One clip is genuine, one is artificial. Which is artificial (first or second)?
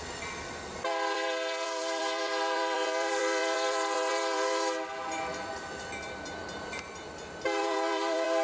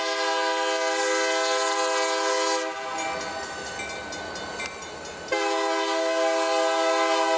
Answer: first